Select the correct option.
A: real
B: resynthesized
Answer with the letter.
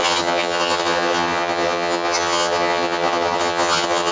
B